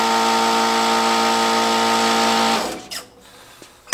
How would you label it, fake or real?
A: real